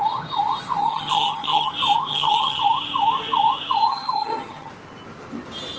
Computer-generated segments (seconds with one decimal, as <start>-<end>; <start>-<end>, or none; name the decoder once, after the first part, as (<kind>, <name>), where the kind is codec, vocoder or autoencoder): 0.8-1.7 (vocoder, HiFi-GAN); 2.1-2.6; 3.9-4.7